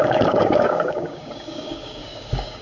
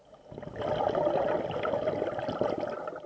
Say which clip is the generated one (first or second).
first